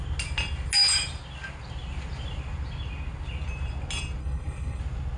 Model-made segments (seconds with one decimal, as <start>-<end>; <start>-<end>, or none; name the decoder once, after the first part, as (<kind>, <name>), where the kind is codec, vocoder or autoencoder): 4.2-4.8 (codec, HILCodec)